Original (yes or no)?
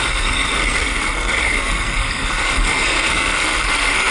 no